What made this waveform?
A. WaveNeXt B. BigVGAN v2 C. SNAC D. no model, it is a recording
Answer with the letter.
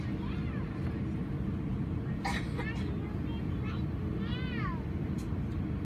D